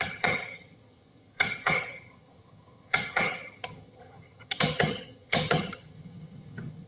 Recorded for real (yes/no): no